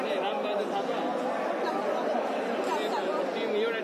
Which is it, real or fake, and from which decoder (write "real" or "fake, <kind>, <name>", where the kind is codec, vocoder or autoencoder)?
real